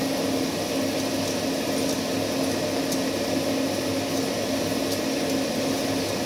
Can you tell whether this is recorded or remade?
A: recorded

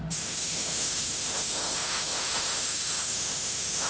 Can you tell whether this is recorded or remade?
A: remade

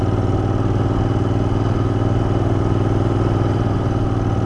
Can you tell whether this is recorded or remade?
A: recorded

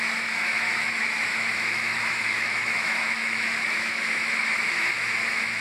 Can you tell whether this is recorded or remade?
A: remade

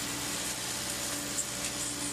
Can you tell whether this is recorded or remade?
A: recorded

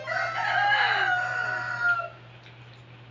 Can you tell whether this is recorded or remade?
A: recorded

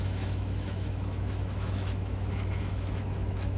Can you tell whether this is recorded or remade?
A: remade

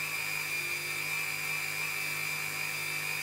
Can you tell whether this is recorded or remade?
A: recorded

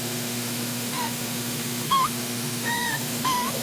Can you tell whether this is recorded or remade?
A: remade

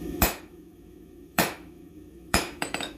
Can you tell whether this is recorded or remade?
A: remade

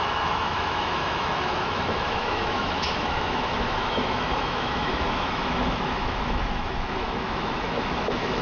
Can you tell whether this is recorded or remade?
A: remade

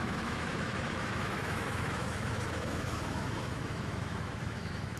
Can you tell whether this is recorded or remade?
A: remade